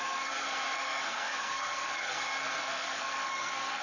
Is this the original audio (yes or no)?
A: no